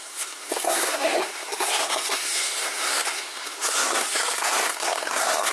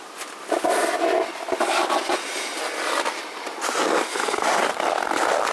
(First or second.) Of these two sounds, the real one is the second